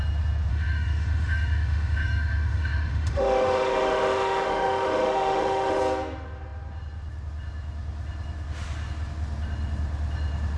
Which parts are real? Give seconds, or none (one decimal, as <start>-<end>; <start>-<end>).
0.0-0.5; 5.8-10.6

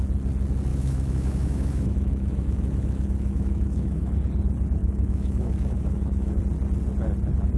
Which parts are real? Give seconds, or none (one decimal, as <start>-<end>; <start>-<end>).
0.0-0.7; 4.2-4.8; 6.4-7.6

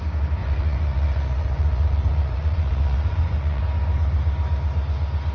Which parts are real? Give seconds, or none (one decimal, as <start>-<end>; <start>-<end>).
0.0-0.4; 3.6-5.3

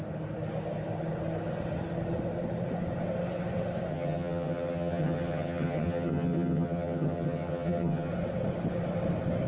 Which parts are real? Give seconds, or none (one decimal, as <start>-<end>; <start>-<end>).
0.0-3.9; 8.1-9.5

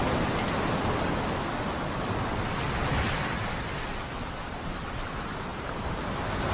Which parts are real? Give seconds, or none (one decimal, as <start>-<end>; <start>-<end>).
0.0-6.5

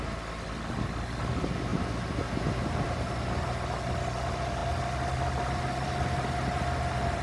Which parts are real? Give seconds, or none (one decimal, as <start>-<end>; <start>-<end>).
0.0-7.2

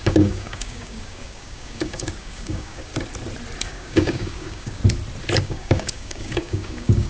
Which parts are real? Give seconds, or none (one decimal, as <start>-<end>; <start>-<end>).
2.9-3.6; 4.8-5.4

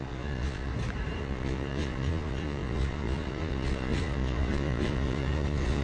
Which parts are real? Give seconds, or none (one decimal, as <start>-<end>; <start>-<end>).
0.7-1.2